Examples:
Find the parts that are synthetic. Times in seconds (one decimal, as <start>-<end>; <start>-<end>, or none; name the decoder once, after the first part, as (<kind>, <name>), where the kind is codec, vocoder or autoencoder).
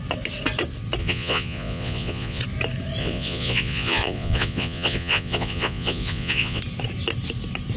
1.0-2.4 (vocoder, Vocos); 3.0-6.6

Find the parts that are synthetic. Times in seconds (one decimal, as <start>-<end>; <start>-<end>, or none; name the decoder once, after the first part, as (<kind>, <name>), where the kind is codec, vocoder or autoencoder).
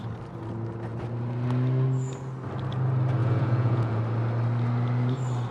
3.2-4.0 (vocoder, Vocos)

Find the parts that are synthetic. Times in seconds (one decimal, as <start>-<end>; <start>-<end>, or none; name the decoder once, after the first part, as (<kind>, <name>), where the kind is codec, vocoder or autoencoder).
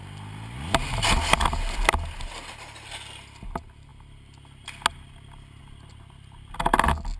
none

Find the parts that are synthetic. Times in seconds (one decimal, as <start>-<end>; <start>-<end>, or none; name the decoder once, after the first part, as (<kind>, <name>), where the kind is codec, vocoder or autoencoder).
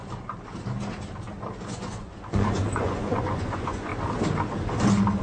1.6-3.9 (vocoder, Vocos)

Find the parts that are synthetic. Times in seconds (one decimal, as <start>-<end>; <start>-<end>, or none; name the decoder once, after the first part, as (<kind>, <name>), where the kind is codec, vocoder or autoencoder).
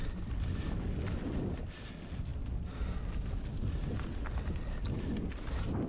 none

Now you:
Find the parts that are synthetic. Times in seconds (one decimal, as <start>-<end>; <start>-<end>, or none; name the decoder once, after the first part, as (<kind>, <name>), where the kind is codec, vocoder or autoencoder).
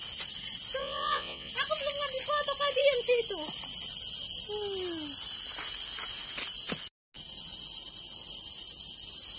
0.8-1.5 (vocoder, Vocos)